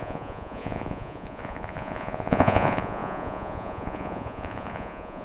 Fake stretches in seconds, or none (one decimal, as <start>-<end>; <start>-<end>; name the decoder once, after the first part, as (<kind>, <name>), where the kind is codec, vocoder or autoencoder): 0.0-5.2 (vocoder, Vocos)